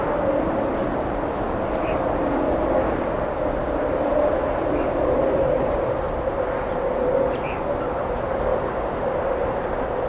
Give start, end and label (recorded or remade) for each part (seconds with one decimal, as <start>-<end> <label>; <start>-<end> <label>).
0.0-0.8 recorded; 0.8-1.6 remade; 1.6-3.6 recorded; 3.6-6.0 remade; 6.0-8.5 recorded; 8.5-9.3 remade; 9.3-10.1 recorded